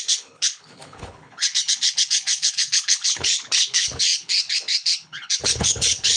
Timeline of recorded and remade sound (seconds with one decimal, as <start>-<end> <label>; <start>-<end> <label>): 0.0-6.2 remade